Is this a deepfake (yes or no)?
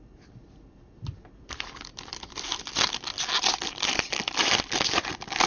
yes